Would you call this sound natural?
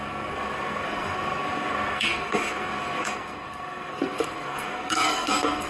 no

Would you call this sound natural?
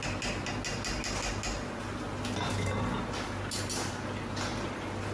yes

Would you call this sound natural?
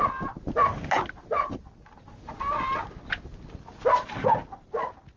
yes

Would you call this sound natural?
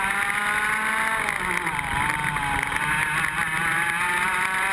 yes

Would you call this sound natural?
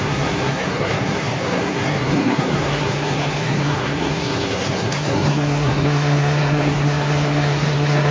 no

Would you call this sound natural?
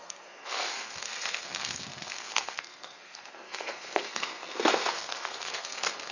no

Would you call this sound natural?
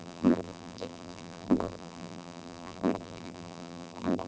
no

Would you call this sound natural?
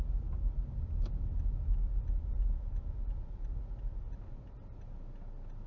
yes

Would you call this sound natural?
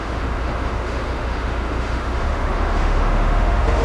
no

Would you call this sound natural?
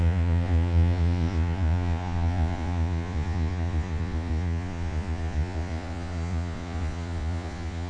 no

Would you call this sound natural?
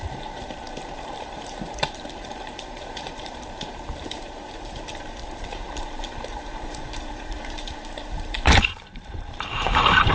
no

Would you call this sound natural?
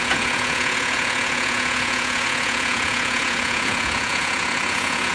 no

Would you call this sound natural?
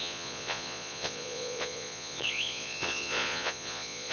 no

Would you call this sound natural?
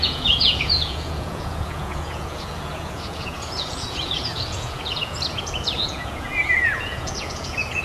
no